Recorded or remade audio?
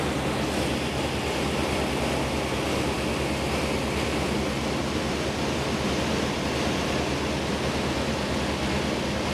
recorded